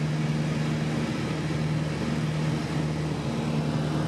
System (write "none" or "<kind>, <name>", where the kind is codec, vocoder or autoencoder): none